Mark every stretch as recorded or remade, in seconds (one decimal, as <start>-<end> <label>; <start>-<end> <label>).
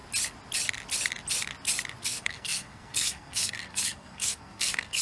0.0-2.0 recorded; 2.0-5.0 remade